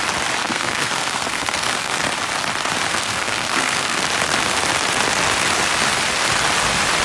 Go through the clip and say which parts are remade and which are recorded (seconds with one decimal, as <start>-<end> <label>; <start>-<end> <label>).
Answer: 0.0-0.4 recorded; 0.4-2.0 remade; 2.0-2.9 recorded; 2.9-4.0 remade; 4.0-7.0 recorded